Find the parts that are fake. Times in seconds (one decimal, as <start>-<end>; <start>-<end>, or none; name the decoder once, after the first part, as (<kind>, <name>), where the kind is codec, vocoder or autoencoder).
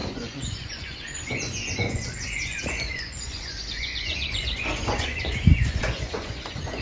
0.0-6.8 (vocoder, Vocos)